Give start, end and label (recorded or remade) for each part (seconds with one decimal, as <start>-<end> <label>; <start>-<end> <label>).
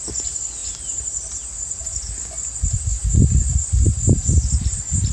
0.0-0.6 recorded; 0.6-1.8 remade; 1.8-3.0 recorded; 3.0-5.1 remade